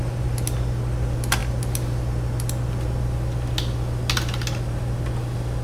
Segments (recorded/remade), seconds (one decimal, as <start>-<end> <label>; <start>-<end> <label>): 0.0-5.6 recorded